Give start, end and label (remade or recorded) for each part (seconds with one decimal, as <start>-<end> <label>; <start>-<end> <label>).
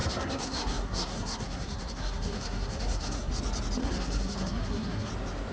0.0-3.3 remade; 3.3-3.8 recorded; 3.8-5.1 remade; 5.1-5.5 recorded